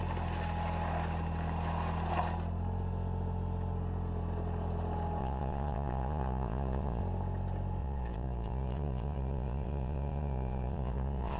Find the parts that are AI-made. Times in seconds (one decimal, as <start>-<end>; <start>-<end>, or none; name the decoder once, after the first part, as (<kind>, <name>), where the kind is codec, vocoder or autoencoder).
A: 5.2-7.0 (vocoder, Vocos); 7.8-11.4

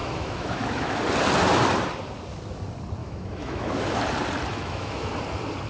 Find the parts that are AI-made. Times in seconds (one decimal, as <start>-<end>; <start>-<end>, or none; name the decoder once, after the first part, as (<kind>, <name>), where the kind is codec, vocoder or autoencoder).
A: 0.0-1.0 (autoencoder, DAC-VAE); 3.0-4.0; 4.5-5.1

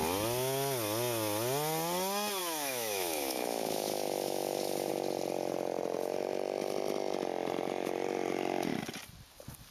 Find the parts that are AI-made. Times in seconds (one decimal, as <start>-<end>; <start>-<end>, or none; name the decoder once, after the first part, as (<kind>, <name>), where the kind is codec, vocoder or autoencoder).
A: 2.4-4.9 (autoencoder, DAC-VAE)

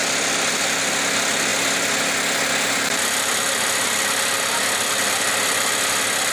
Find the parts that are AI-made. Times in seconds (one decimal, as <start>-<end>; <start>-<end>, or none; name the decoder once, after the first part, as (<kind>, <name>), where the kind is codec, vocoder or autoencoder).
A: none

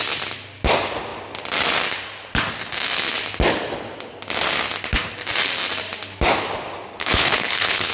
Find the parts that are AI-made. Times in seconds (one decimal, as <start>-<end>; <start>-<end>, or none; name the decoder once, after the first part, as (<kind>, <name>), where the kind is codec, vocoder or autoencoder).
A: 6.9-7.9 (codec, HILCodec)

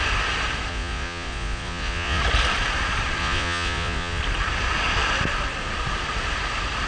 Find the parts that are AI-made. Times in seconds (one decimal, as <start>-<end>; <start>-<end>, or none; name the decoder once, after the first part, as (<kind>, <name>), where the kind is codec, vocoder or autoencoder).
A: 0.7-2.2 (vocoder, Vocos); 3.2-4.2

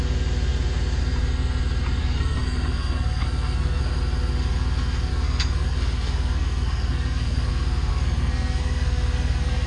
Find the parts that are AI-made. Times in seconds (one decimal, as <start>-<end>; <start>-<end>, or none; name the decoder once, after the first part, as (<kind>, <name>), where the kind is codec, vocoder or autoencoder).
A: 2.0-3.8 (codec, SNAC); 5.1-7.5; 7.9-9.7